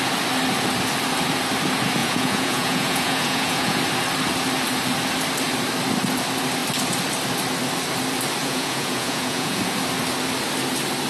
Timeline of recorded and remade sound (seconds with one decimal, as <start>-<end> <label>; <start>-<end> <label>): 0.0-2.0 recorded; 2.0-3.8 remade; 3.8-8.4 recorded; 8.4-9.6 remade; 9.6-11.1 recorded